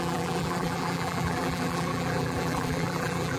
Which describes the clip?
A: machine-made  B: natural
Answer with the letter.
A